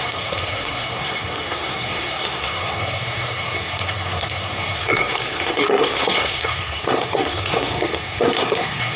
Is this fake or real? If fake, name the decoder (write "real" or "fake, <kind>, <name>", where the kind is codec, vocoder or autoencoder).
fake, codec, SNAC